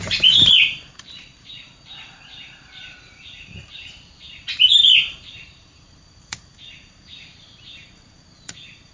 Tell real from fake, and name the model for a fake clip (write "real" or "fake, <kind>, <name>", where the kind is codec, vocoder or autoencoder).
fake, vocoder, BigVGAN v2